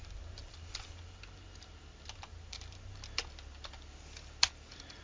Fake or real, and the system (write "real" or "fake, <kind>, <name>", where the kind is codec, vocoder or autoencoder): real